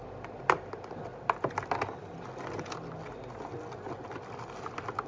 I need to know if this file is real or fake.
real